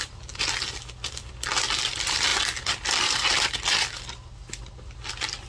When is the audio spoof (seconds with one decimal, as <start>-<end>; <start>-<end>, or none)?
none